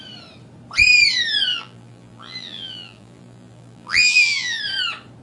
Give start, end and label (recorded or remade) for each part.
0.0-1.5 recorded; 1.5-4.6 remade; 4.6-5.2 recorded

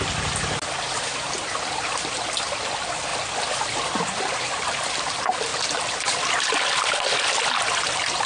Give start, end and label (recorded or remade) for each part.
0.0-8.3 recorded

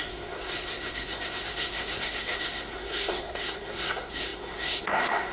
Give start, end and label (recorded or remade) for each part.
0.0-5.3 remade

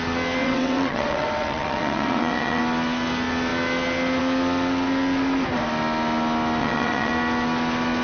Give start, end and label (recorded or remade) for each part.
0.0-0.4 recorded; 0.4-2.6 remade; 2.6-6.6 recorded; 6.6-7.1 remade; 7.1-8.0 recorded

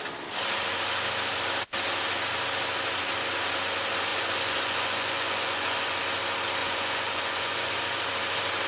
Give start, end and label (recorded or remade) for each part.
0.0-4.1 recorded; 4.1-6.0 remade; 6.0-6.6 recorded; 6.6-7.7 remade; 7.7-8.7 recorded

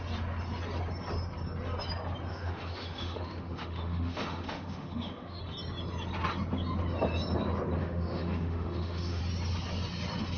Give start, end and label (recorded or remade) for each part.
0.0-2.3 recorded; 2.3-5.4 remade; 5.4-7.8 recorded; 7.8-9.2 remade; 9.2-10.4 recorded

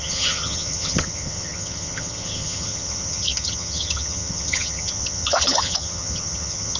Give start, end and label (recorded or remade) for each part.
0.0-6.8 remade

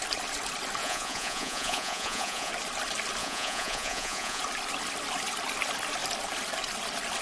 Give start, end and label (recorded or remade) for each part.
0.0-0.8 recorded; 0.8-2.5 remade; 2.5-3.2 recorded; 3.2-4.4 remade; 4.4-7.2 recorded